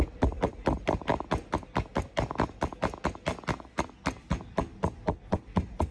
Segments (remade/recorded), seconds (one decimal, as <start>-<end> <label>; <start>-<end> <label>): 0.0-5.9 recorded